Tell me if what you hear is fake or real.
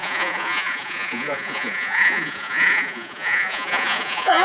fake